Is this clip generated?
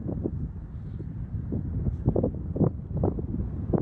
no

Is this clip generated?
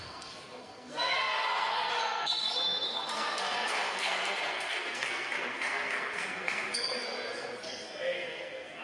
yes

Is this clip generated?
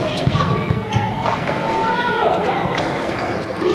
yes